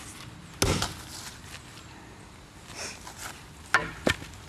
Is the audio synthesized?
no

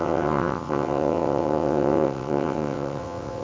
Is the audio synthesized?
yes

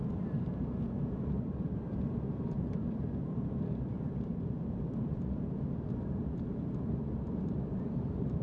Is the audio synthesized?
yes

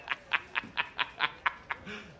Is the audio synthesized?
no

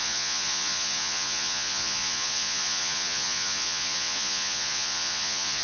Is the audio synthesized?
yes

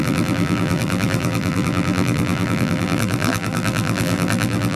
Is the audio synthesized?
yes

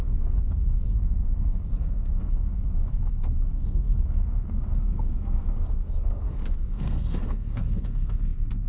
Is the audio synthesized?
yes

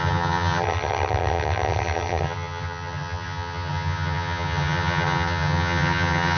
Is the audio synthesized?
yes